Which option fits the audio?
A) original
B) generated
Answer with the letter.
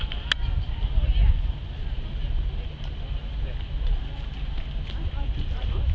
A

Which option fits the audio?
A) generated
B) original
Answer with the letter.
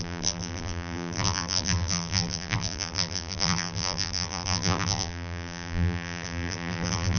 A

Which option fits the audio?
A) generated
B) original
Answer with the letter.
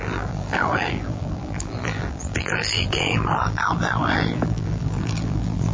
A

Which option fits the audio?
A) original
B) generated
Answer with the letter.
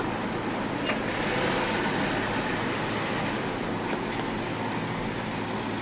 A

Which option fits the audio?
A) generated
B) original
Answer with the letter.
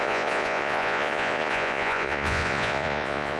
A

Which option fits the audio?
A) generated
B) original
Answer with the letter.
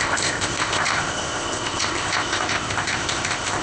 A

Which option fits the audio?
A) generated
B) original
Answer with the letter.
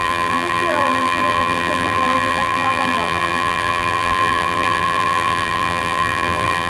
A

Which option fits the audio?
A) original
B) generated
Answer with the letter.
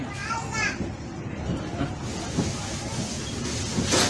A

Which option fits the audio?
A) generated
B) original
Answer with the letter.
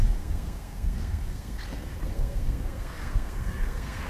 A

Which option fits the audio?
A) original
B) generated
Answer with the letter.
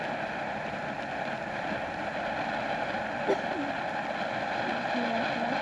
A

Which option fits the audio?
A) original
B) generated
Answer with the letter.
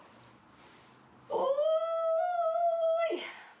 A